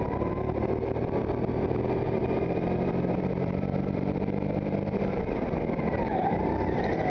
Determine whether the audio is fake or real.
fake